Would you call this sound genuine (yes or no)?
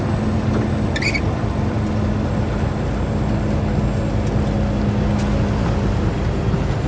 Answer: yes